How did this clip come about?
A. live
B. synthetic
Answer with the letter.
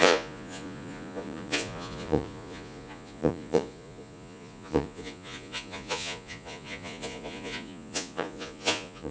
B